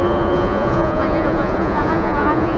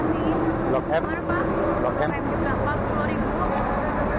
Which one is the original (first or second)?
second